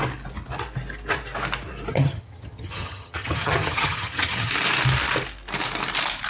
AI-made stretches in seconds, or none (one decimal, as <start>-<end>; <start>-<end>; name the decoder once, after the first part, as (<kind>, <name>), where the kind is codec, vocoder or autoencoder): 1.9-4.5 (vocoder, HiFi-GAN)